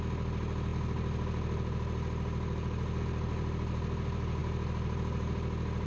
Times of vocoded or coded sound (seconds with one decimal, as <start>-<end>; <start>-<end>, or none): none